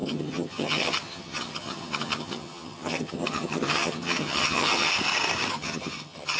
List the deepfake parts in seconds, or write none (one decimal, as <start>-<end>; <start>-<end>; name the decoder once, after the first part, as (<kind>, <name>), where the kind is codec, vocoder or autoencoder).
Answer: 0.0-4.9 (vocoder, HiFi-GAN); 5.5-6.4